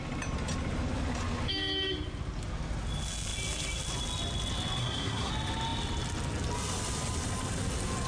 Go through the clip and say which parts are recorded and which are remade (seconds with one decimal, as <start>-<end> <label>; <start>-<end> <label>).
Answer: 0.0-4.8 recorded; 4.8-5.3 remade; 5.3-8.1 recorded